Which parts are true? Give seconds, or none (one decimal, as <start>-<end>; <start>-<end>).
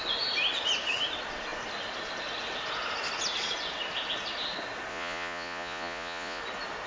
0.0-4.9; 6.4-6.9